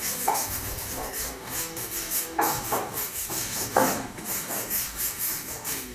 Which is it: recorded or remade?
remade